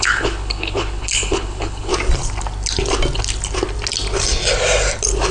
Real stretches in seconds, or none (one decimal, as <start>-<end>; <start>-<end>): 1.9-5.3